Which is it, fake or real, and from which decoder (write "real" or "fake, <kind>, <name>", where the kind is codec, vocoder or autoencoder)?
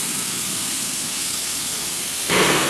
fake, codec, SNAC